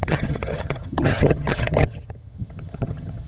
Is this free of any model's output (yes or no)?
no